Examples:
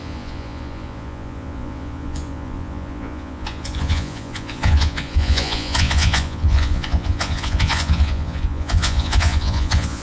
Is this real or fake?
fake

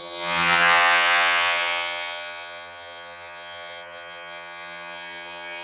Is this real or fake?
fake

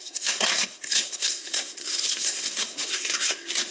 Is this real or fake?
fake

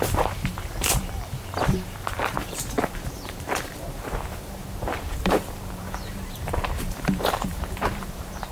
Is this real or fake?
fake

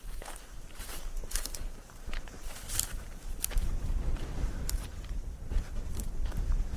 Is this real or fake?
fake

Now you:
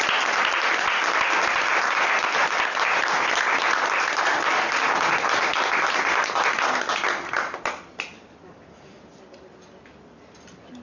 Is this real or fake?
real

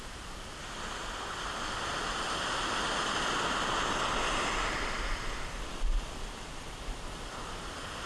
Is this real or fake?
real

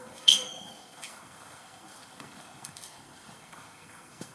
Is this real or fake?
fake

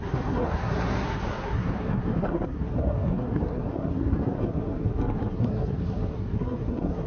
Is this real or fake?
fake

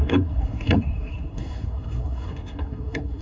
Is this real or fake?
fake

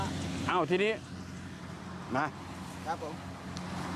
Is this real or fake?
real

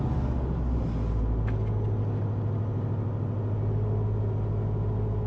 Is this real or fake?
real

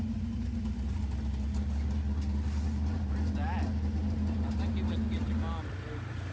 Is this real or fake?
real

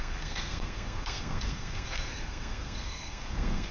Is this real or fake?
fake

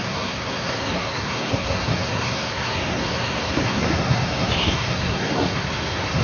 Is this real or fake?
fake